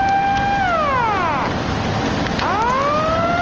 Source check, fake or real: real